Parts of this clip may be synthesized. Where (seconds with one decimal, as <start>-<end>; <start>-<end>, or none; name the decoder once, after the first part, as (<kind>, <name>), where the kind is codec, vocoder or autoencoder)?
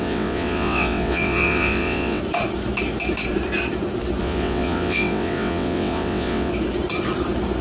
0.0-2.2 (vocoder, WaveNeXt); 4.2-6.5